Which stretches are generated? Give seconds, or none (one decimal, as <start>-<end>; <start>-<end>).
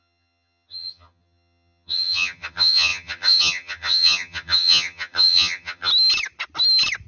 0.0-5.9